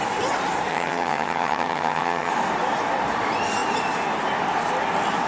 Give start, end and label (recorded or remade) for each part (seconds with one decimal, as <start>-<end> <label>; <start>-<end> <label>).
0.0-0.7 recorded; 0.7-2.3 remade; 2.3-5.3 recorded